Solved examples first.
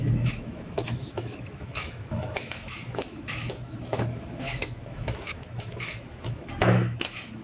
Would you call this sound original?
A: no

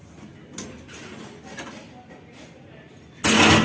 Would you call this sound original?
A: yes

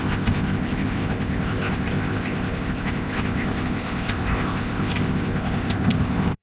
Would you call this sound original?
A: no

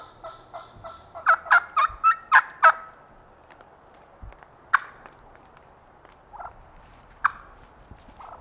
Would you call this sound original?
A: yes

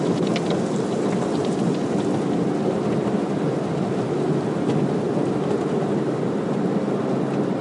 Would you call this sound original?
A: yes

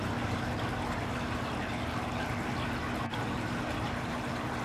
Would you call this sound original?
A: yes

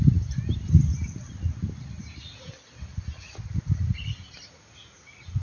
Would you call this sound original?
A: yes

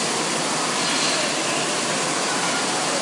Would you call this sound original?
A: yes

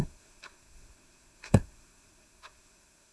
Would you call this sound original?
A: no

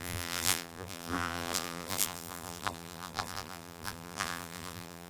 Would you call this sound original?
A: no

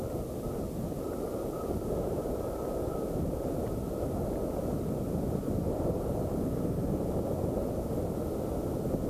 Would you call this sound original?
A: yes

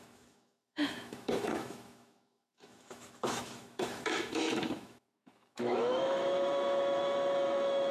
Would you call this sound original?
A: no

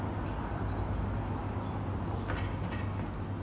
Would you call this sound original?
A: yes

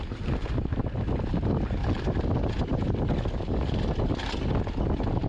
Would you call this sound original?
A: yes